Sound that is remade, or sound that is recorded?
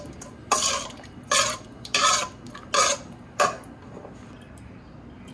recorded